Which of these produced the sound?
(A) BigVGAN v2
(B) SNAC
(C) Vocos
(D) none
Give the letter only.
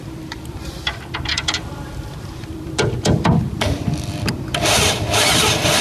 A